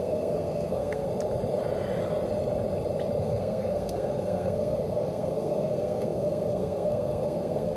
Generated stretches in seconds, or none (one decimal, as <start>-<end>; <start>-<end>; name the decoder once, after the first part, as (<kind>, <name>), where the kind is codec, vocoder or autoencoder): 0.0-1.1 (codec, SNAC); 3.2-7.8